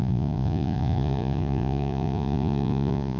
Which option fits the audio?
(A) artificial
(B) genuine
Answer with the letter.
A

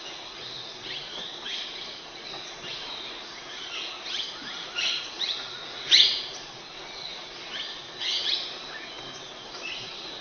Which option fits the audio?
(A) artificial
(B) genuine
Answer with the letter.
A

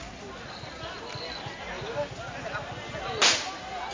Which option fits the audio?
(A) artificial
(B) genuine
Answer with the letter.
B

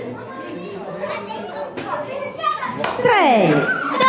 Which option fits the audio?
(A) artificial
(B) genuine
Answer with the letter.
B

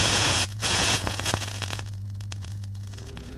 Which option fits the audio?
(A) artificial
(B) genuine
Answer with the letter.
A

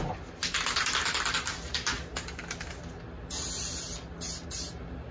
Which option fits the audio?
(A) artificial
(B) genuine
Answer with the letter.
B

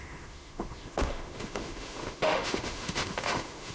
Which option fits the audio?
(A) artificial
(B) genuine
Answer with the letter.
A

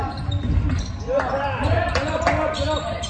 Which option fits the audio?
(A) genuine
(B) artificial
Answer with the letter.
A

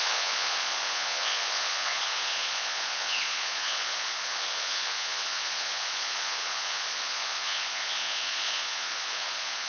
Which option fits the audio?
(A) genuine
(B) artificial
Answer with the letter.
B